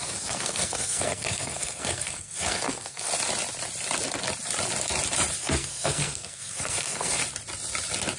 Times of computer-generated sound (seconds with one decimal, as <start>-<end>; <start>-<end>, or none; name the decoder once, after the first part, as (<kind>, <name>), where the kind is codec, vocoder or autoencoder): 0.0-3.1 (codec, SNAC); 5.4-7.2